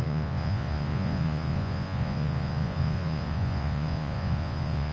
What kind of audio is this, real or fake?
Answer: fake